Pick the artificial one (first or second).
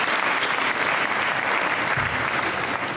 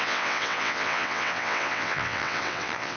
second